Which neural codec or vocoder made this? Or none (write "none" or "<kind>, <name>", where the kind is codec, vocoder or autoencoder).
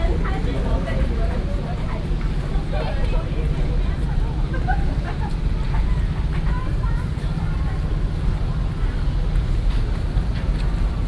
none